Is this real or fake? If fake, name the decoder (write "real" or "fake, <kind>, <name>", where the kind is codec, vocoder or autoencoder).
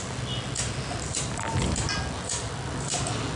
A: fake, vocoder, BigVGAN v2